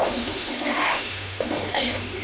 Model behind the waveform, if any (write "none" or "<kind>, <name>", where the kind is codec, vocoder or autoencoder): autoencoder, DAC-VAE